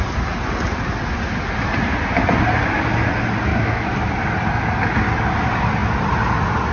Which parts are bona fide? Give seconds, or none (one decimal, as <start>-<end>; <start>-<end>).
0.0-3.5; 4.1-6.7

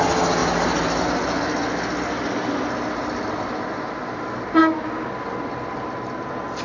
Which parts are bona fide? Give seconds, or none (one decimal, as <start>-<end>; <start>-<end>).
0.0-4.6; 5.1-6.6